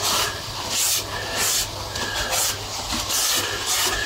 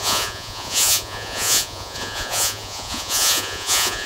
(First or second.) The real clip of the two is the first